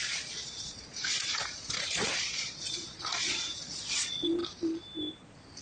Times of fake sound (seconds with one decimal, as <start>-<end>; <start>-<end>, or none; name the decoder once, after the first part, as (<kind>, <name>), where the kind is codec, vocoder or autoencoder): 0.0-4.4 (vocoder, Vocos)